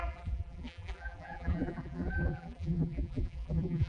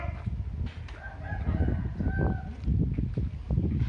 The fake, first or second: first